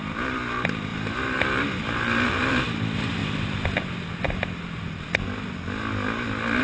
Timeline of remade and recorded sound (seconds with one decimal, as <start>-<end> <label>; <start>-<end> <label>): 0.0-3.2 remade; 3.2-6.6 recorded